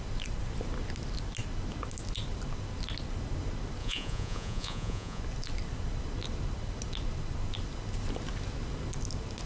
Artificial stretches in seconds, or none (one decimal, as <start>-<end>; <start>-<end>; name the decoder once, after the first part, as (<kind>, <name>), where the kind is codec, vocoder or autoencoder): 3.8-5.2 (vocoder, Vocos)